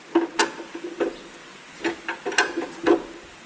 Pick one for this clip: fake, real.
real